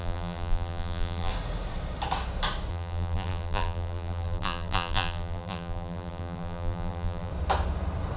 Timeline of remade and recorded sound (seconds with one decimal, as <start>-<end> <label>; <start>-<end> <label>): 0.0-1.3 remade; 1.3-2.7 recorded; 2.7-7.3 remade; 7.3-8.2 recorded